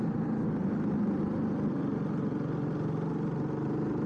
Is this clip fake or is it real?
real